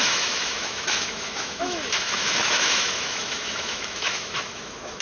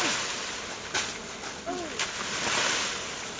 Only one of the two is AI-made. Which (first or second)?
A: first